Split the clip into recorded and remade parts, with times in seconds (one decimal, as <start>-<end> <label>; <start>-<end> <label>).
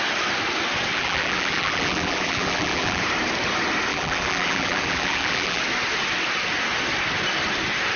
0.0-0.9 recorded; 0.9-3.0 remade; 3.0-3.9 recorded; 3.9-5.6 remade; 5.6-8.0 recorded